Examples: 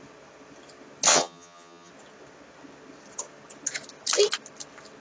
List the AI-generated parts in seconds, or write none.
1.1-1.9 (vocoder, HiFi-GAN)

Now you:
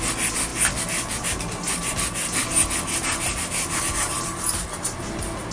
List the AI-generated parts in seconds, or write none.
none

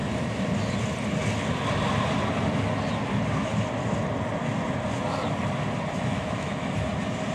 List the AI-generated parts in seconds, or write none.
6.1-6.7 (autoencoder, DAC-VAE)

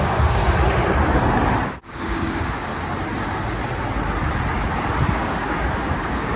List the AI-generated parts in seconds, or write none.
0.0-0.4 (codec, DAC); 1.7-2.7; 5.1-6.4

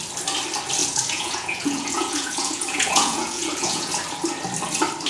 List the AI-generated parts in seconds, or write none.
0.8-3.9 (vocoder, Vocos)

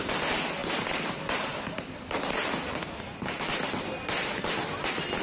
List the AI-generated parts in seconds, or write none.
none

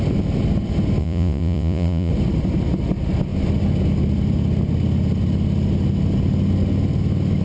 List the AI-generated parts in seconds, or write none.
1.0-2.1 (vocoder, Vocos)